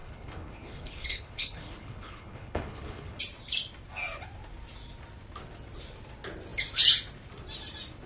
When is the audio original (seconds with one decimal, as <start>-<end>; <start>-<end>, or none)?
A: 3.2-8.1